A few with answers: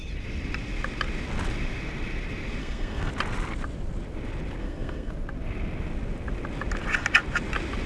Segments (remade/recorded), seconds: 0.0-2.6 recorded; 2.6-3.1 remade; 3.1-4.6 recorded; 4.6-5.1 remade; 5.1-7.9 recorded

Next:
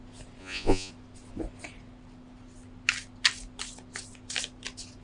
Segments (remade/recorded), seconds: 0.0-0.4 recorded; 0.4-0.9 remade; 0.9-5.0 recorded

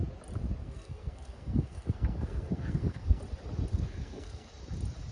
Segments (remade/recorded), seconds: 0.0-0.6 recorded; 0.6-3.2 remade; 3.2-3.7 recorded; 3.7-4.5 remade; 4.5-5.1 recorded

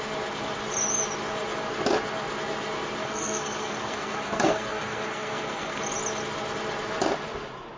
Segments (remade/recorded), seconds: 0.0-3.0 recorded; 3.0-5.8 remade; 5.8-7.8 recorded

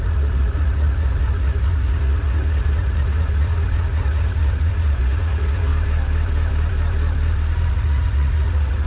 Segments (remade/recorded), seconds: 0.0-5.7 remade; 5.7-7.7 recorded; 7.7-8.9 remade

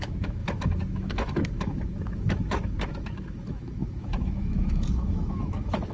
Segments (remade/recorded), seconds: 0.0-5.9 remade

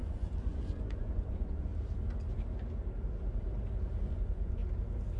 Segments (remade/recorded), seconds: 0.0-1.7 remade; 1.7-4.0 recorded; 4.0-4.6 remade; 4.6-5.2 recorded

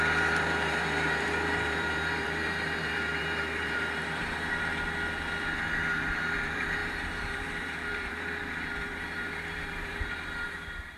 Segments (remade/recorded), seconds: 0.0-4.7 remade; 4.7-5.8 recorded; 5.8-11.0 remade